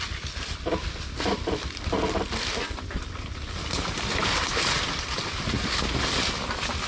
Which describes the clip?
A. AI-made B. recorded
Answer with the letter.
B